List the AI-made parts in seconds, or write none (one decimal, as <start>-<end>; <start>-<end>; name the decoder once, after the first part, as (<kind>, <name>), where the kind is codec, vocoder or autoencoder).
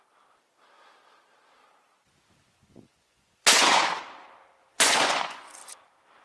2.4-4.0 (vocoder, Vocos); 4.6-5.5